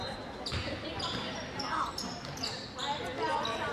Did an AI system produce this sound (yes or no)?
no